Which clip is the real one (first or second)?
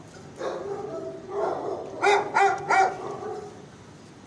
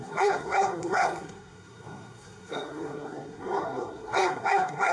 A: first